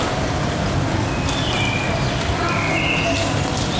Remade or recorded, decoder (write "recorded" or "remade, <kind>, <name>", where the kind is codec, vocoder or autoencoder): recorded